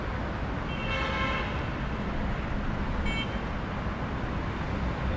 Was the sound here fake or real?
real